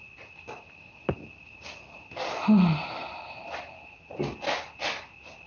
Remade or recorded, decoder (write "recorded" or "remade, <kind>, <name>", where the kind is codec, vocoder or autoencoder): recorded